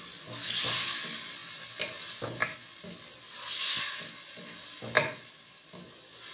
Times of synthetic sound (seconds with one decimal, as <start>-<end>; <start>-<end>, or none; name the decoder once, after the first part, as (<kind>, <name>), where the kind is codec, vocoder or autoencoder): none